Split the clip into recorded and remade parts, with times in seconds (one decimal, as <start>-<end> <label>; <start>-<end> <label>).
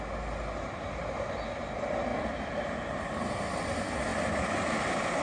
0.0-5.2 recorded